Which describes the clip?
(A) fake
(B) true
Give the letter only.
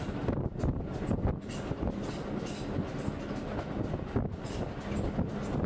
B